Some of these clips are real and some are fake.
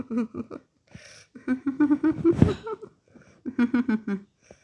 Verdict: real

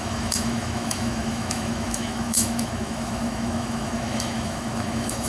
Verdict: fake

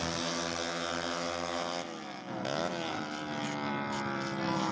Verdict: real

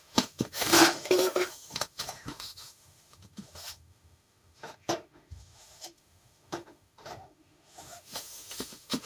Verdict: fake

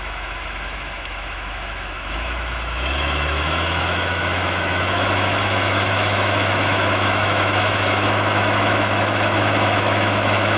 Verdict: fake